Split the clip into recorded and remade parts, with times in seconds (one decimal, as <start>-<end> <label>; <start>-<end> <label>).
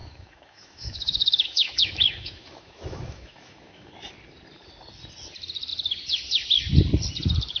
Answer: 0.0-3.9 remade; 3.9-7.6 recorded